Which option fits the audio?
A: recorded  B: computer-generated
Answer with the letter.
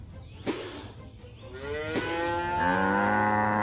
A